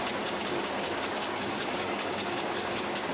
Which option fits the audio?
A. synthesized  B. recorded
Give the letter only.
A